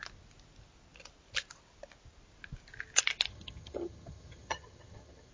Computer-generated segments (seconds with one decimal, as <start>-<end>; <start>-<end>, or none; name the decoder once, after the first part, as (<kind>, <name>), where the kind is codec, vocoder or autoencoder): 3.3-5.3 (vocoder, HiFi-GAN)